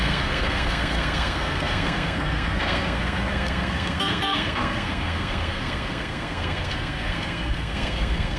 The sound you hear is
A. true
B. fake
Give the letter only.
B